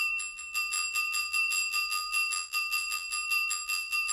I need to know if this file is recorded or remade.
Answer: remade